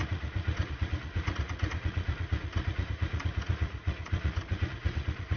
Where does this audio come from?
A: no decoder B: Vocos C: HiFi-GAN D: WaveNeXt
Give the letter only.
B